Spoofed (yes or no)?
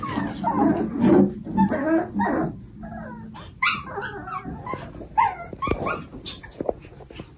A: no